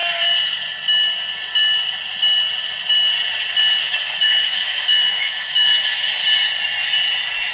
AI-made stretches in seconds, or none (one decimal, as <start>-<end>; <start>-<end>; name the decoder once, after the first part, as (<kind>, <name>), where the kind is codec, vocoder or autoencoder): 3.8-6.2 (autoencoder, DAC-VAE)